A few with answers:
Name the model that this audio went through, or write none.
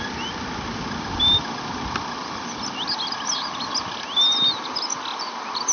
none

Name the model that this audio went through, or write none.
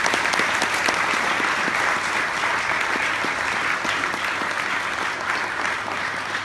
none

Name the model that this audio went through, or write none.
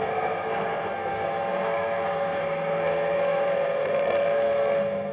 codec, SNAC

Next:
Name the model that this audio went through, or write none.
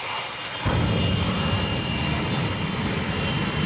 none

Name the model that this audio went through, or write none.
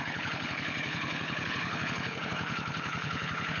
codec, HILCodec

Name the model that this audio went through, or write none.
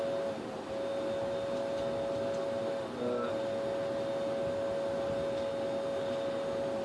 none